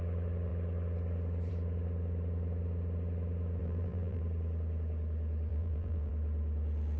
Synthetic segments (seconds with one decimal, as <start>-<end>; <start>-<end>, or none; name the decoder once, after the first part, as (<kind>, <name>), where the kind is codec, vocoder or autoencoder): 3.6-4.2 (vocoder, BigVGAN v2); 5.5-6.1